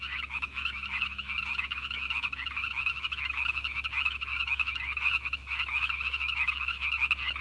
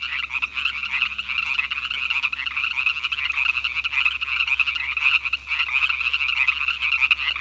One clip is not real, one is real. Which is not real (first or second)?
first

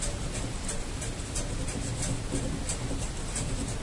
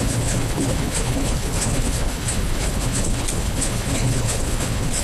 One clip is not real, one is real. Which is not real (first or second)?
second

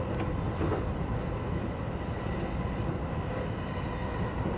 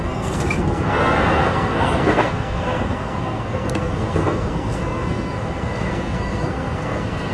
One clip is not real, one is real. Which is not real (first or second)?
second